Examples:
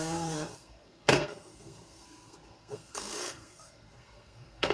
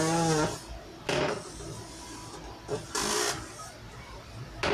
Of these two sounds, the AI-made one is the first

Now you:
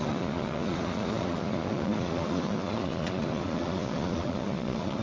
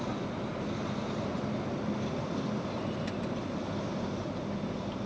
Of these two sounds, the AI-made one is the first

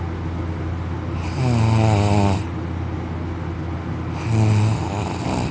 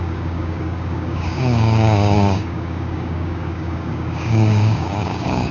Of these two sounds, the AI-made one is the second